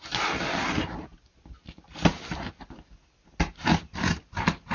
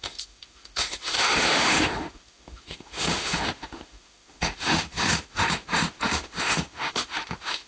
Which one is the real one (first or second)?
first